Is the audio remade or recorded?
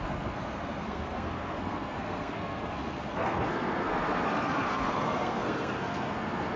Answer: remade